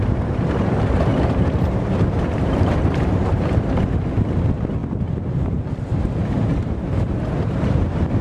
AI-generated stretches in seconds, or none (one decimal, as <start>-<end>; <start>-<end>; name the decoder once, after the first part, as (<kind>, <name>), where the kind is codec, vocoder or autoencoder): 0.0-4.8 (vocoder, BigVGAN v2); 5.4-8.2